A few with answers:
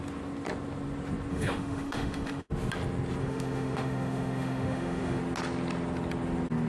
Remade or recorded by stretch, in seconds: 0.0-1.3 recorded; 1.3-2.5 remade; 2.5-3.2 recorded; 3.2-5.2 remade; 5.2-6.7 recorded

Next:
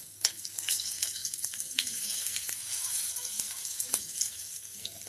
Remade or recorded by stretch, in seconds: 0.0-5.1 remade

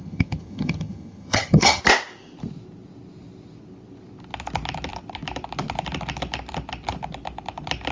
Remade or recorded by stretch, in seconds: 0.0-1.8 remade; 1.8-7.9 recorded

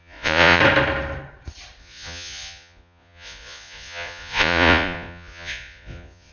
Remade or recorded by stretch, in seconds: 0.0-0.6 remade; 0.6-1.8 recorded; 1.8-6.3 remade

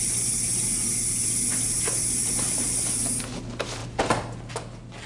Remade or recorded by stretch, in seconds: 0.0-5.1 recorded

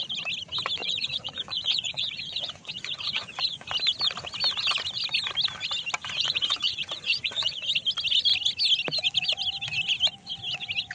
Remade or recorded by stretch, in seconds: 0.0-0.8 recorded; 0.8-3.7 remade; 3.7-6.0 recorded; 6.0-7.6 remade; 7.6-10.9 recorded

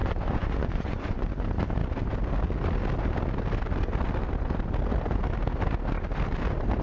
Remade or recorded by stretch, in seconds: 0.0-1.3 remade; 1.3-6.8 recorded